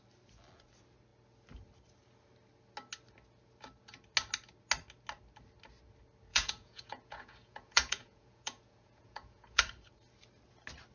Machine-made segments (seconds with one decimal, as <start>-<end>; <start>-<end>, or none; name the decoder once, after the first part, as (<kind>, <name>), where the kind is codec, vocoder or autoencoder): 6.3-9.6 (vocoder, Vocos)